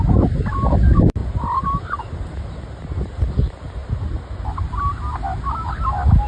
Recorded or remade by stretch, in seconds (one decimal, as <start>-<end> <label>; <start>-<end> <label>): 0.0-6.3 recorded